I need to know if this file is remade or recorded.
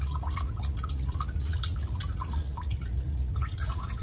remade